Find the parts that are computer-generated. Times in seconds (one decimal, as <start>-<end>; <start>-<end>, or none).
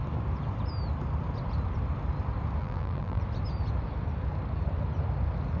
2.6-3.2